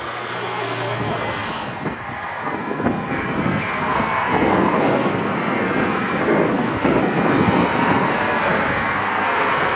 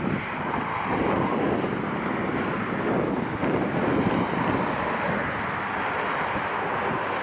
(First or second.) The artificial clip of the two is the first